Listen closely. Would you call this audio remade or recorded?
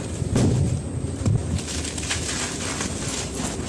recorded